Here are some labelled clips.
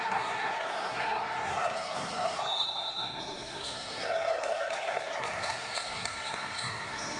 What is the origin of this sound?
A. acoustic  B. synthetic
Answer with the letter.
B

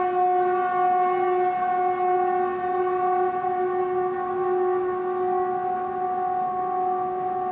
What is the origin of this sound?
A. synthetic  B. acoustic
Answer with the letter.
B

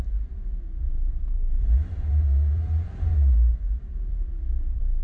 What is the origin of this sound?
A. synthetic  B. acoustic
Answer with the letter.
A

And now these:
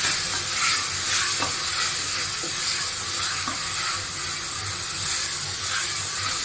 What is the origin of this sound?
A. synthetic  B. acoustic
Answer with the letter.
B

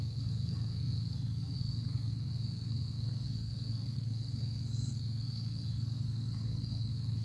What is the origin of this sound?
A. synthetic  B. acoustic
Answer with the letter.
A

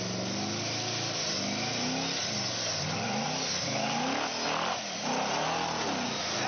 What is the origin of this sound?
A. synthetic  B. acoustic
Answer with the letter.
B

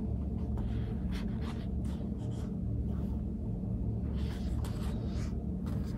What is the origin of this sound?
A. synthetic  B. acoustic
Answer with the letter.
B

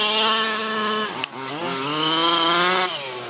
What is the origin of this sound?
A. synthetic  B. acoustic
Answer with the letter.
B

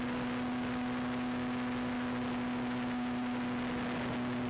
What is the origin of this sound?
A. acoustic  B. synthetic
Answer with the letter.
A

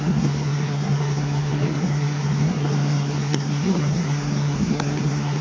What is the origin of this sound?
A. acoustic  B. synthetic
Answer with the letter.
B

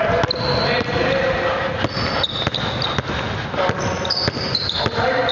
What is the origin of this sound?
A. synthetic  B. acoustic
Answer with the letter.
B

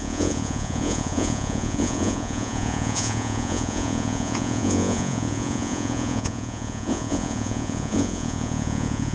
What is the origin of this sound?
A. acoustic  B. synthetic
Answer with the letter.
B